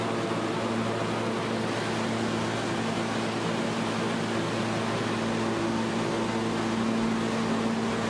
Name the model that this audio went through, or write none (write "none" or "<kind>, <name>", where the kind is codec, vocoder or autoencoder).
none